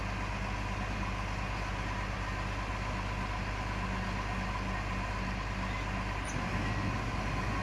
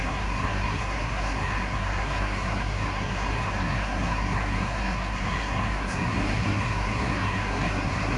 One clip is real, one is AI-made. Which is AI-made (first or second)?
second